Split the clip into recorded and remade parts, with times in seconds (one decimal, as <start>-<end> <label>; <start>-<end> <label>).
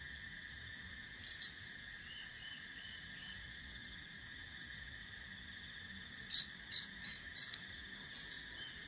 0.0-8.9 recorded